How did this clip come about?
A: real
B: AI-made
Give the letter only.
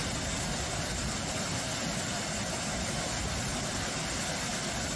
A